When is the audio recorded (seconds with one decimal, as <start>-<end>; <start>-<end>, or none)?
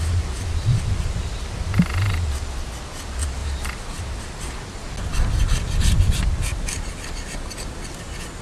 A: 0.0-8.4